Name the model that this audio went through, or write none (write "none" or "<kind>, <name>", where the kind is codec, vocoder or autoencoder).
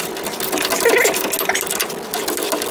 none